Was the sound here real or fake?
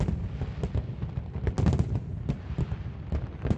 real